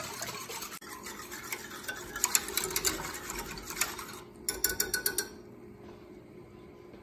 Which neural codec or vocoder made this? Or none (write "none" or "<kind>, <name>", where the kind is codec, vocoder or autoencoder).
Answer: none